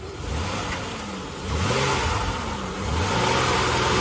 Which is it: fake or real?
real